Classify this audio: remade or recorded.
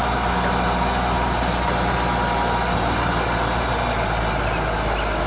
recorded